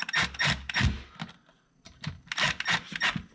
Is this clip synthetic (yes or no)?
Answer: no